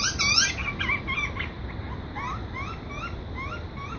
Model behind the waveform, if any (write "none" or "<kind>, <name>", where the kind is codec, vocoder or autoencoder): none